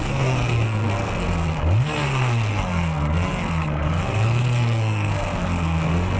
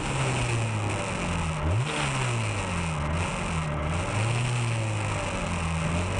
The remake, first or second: first